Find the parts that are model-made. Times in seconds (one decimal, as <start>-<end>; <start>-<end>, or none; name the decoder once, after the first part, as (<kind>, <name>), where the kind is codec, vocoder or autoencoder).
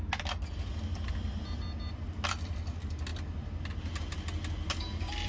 none